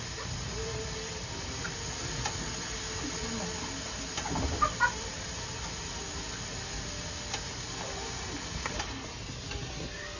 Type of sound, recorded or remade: recorded